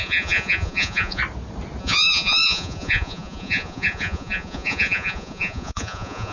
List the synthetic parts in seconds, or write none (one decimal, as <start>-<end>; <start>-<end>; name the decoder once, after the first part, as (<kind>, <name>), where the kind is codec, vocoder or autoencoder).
0.0-1.2 (vocoder, Vocos); 1.8-6.3